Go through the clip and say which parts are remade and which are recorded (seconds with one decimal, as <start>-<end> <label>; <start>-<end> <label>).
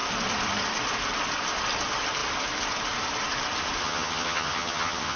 0.0-3.8 recorded; 3.8-5.2 remade